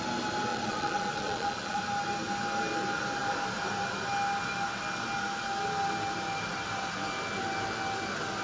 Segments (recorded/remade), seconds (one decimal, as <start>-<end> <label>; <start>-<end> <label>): 0.0-0.5 recorded; 0.5-1.8 remade; 1.8-8.4 recorded